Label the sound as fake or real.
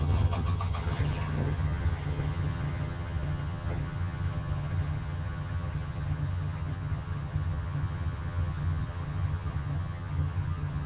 fake